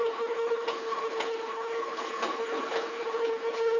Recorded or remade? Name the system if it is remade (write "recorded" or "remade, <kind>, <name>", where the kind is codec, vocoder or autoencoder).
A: remade, codec, HILCodec